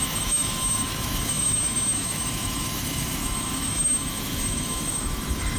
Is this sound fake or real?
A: fake